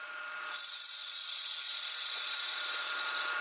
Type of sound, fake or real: fake